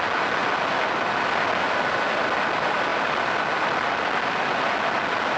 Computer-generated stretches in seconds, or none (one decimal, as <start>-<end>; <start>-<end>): none